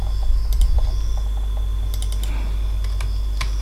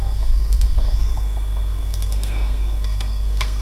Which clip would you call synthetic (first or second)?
second